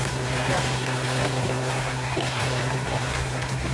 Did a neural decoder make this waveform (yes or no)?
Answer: yes